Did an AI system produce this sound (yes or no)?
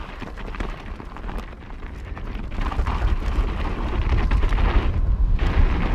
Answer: no